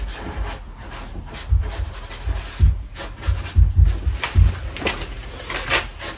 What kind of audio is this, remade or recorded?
recorded